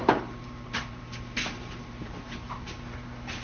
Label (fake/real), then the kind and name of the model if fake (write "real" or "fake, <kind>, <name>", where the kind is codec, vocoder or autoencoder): fake, vocoder, BigVGAN v2